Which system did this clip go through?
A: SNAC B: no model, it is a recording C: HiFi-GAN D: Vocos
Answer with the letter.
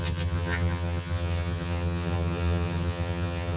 C